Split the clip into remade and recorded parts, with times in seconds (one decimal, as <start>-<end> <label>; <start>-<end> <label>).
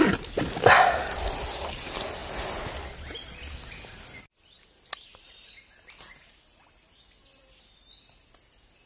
0.0-8.9 recorded